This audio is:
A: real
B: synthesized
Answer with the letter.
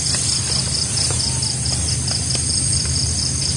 B